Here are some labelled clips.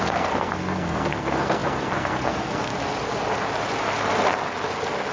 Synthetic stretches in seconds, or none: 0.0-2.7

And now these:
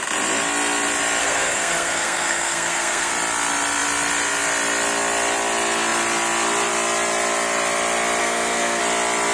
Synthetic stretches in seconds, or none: 1.2-3.1; 8.2-8.8

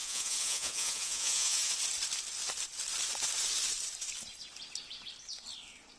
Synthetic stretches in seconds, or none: 0.0-1.7

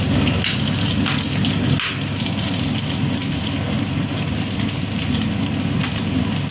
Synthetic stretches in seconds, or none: none